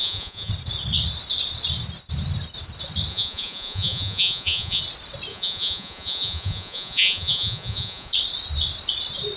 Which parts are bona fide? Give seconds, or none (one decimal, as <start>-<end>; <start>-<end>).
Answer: 0.5-3.1; 4.8-5.3; 8.1-9.4